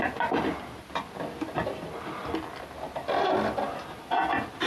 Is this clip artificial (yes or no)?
no